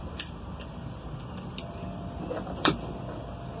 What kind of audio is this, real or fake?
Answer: fake